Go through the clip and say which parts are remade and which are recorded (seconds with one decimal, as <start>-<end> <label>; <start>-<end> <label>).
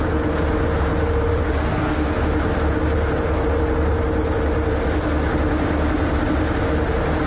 0.0-1.6 recorded; 1.6-2.2 remade; 2.2-7.3 recorded